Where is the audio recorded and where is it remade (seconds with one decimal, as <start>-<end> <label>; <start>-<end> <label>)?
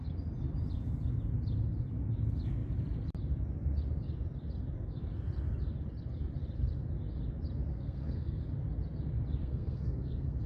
0.0-7.7 recorded; 7.7-8.4 remade; 8.4-9.4 recorded; 9.4-10.5 remade